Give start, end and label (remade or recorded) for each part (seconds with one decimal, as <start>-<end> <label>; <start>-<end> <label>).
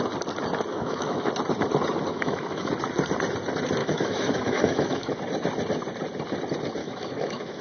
0.0-0.7 recorded; 0.7-1.3 remade; 1.3-2.1 recorded; 2.1-2.7 remade; 2.7-3.8 recorded; 3.8-5.2 remade; 5.2-6.8 recorded; 6.8-7.6 remade